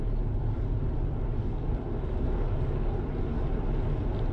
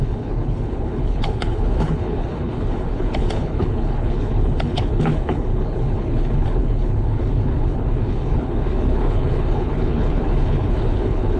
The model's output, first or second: second